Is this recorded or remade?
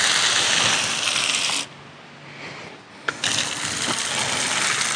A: recorded